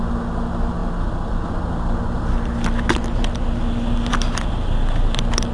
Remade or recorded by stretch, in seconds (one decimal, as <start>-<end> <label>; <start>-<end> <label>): 0.0-5.5 recorded